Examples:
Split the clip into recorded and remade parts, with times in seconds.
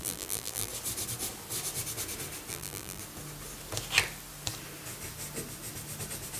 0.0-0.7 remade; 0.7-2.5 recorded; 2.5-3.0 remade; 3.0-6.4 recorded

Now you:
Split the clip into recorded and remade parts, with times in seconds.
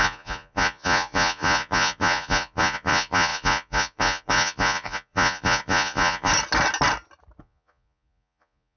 0.0-6.3 remade; 6.3-7.4 recorded; 7.4-8.8 remade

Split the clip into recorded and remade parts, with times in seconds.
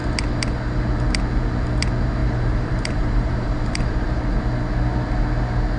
0.0-2.2 recorded; 2.2-4.2 remade; 4.2-5.8 recorded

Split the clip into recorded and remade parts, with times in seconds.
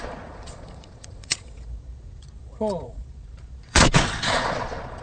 0.0-5.0 remade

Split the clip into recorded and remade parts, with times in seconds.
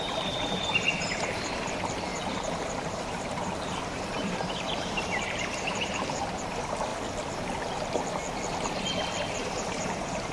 0.0-6.9 remade; 6.9-9.2 recorded; 9.2-10.3 remade